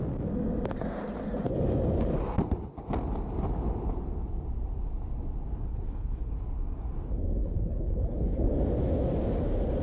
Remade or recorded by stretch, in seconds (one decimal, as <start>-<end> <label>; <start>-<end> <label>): 0.0-5.7 recorded; 5.7-6.3 remade; 6.3-7.4 recorded; 7.4-8.5 remade; 8.5-9.8 recorded